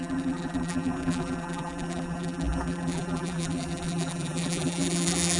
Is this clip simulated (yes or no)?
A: yes